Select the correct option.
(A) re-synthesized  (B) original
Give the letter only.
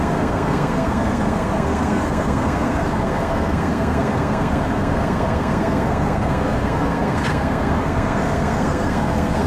A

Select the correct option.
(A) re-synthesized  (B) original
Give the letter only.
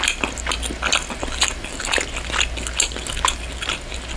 B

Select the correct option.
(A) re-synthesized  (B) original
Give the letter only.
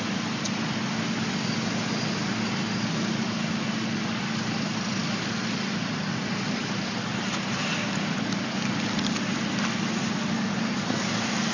B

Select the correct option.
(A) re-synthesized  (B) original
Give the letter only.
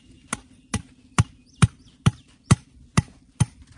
A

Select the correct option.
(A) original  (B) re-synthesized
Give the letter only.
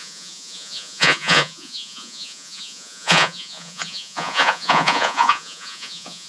B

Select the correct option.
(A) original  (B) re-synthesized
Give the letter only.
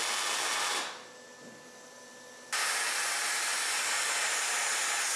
A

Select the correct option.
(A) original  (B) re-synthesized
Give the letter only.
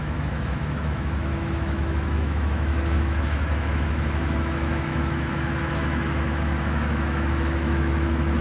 B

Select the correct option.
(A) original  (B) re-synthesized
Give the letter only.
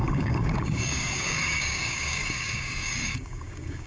B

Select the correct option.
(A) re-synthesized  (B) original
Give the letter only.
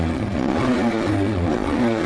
A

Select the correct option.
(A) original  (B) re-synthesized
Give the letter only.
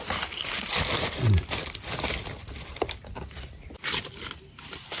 A